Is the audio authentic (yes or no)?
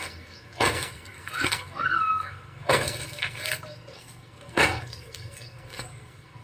no